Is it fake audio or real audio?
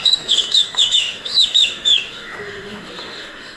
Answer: fake